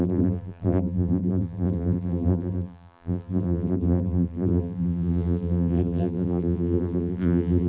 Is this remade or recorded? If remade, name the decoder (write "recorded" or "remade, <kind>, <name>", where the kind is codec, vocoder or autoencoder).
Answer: remade, vocoder, BigVGAN v2